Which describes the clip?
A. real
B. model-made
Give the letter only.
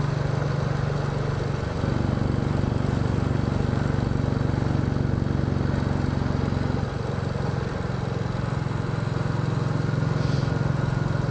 A